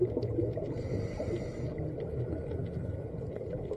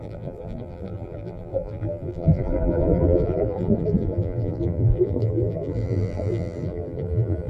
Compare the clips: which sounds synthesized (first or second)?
second